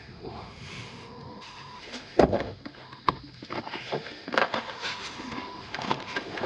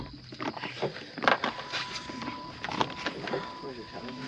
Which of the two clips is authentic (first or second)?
second